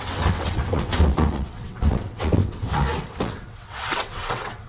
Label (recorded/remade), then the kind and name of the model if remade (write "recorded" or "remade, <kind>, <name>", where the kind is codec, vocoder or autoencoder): remade, vocoder, WaveNeXt